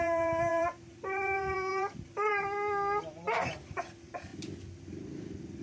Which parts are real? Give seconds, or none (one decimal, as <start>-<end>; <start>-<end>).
2.3-3.1; 4.3-5.6